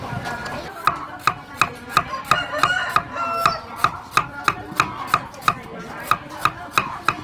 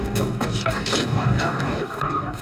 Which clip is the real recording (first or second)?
first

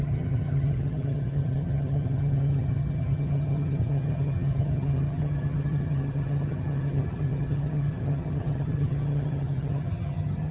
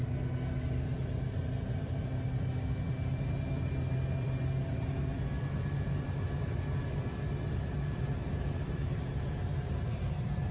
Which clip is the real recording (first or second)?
second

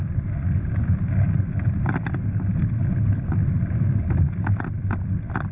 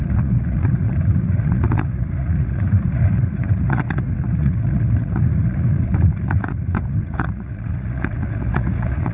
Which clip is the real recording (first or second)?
first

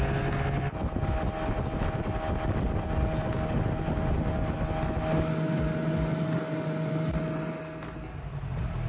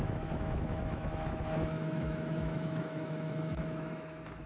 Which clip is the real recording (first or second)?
first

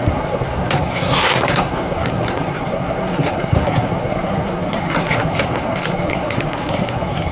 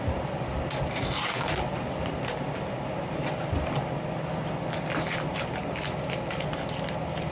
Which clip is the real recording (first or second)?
second